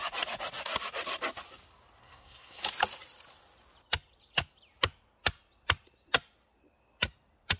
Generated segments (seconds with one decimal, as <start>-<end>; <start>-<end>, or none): 2.0-2.6